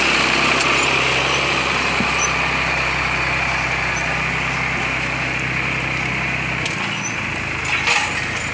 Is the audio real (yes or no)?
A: yes